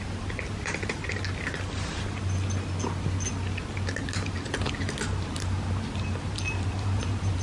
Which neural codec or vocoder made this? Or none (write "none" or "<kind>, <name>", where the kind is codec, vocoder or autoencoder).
none